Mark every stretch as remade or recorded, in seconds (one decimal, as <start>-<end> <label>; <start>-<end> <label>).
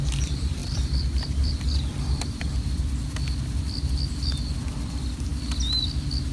0.0-5.3 remade; 5.3-5.8 recorded; 5.8-6.3 remade